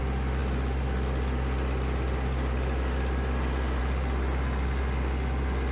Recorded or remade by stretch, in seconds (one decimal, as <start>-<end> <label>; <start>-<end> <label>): 0.0-5.7 recorded